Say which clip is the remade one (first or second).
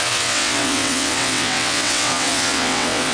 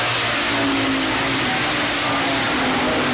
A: first